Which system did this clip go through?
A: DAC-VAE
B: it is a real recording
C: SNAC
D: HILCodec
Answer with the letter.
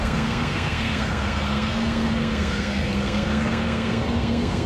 C